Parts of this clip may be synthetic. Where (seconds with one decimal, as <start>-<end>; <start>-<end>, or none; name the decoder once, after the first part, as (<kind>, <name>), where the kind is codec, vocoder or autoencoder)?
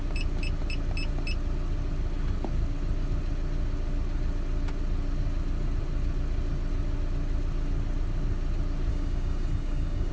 8.9-10.1 (codec, DAC)